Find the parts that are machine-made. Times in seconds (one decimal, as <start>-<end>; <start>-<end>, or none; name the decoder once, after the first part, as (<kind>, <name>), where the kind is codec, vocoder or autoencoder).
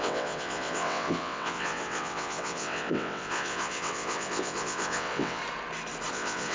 0.0-5.4 (vocoder, WaveNeXt); 6.1-6.5